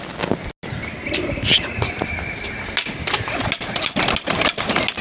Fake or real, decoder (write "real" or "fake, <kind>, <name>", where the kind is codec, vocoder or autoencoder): real